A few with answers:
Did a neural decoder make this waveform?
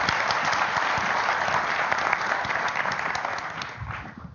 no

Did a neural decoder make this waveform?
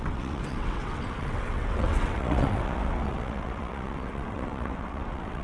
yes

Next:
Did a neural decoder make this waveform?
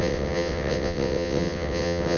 yes